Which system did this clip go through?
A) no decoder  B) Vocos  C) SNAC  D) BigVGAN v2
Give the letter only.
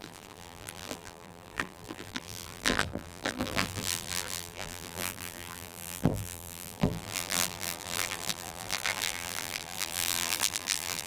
D